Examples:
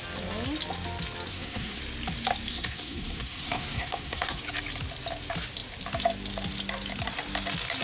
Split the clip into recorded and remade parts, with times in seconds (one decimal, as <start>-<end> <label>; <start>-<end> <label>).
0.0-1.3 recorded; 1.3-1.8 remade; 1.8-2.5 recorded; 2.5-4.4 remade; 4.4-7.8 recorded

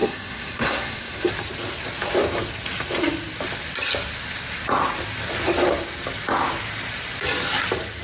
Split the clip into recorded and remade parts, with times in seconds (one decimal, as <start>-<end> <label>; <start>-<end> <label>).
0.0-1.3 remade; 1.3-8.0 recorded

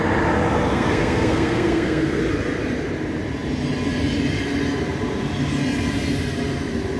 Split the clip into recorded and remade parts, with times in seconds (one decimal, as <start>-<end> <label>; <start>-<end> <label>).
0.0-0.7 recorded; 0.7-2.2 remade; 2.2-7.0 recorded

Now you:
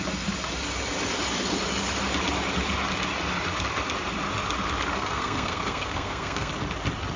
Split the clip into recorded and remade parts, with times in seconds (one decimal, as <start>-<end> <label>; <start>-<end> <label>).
0.0-4.9 recorded; 4.9-6.5 remade; 6.5-7.2 recorded

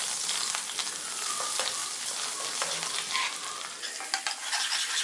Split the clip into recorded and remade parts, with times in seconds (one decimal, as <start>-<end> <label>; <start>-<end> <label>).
0.0-5.0 recorded

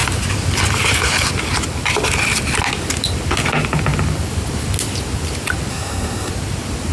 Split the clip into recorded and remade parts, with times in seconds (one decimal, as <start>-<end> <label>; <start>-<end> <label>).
0.0-5.7 recorded; 5.7-6.3 remade; 6.3-6.9 recorded

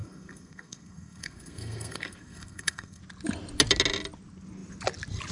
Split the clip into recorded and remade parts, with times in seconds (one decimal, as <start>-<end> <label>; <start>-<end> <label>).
0.0-3.0 remade; 3.0-5.3 recorded

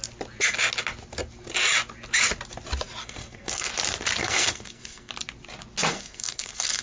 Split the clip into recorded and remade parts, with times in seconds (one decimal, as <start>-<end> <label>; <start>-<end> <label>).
0.0-3.0 recorded; 3.0-3.7 remade; 3.7-4.2 recorded; 4.2-5.1 remade; 5.1-5.9 recorded; 5.9-6.8 remade